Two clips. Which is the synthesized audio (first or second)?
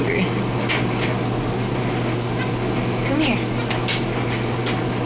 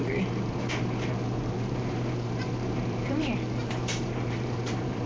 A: second